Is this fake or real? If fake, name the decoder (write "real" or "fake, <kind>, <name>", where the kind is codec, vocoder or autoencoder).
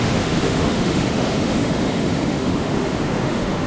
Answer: fake, autoencoder, DAC-VAE